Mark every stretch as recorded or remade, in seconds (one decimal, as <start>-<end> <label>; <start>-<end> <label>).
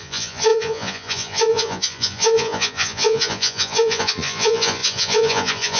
0.0-5.8 remade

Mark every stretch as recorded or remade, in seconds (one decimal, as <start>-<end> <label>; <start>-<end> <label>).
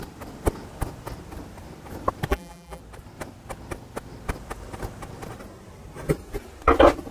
0.0-2.3 recorded; 2.3-2.8 remade; 2.8-7.1 recorded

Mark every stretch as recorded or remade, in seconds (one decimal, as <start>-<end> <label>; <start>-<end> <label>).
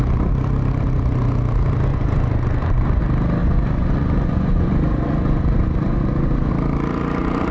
0.0-1.9 recorded; 1.9-3.0 remade; 3.0-3.4 recorded; 3.4-6.5 remade; 6.5-7.5 recorded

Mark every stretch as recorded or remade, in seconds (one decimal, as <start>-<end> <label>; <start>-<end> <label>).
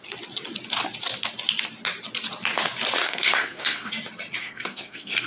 0.0-3.0 recorded; 3.0-3.9 remade; 3.9-4.4 recorded; 4.4-5.3 remade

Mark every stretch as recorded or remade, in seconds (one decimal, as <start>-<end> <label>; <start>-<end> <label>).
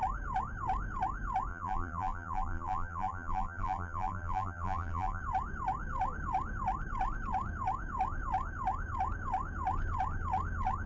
0.0-1.5 recorded; 1.5-5.2 remade; 5.2-10.9 recorded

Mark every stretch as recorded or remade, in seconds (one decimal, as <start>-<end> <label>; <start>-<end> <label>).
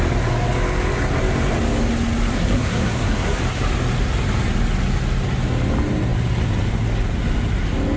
0.0-2.3 recorded; 2.3-3.4 remade; 3.4-8.0 recorded